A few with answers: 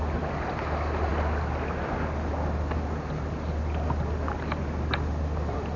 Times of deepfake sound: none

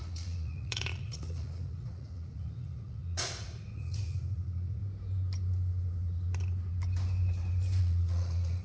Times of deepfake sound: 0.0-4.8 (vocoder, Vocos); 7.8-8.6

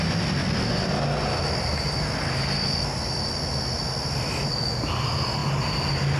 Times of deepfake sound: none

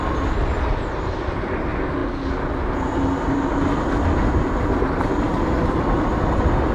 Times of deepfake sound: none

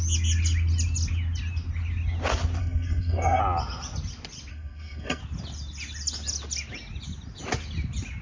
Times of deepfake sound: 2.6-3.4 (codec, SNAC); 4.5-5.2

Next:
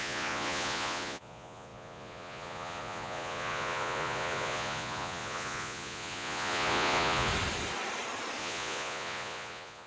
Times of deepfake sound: 0.0-7.3 (vocoder, Vocos); 8.4-9.9